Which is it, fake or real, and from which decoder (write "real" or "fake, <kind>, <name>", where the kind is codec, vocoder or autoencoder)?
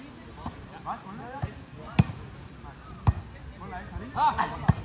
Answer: real